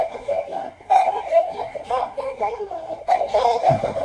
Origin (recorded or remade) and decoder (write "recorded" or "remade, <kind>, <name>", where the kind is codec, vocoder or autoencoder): remade, codec, SNAC